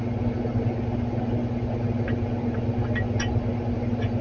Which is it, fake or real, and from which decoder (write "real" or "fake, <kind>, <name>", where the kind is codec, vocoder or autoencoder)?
real